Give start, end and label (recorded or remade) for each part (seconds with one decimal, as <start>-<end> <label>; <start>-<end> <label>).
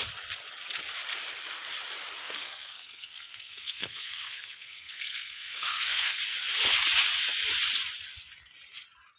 0.0-2.2 recorded; 2.2-6.2 remade; 6.2-9.2 recorded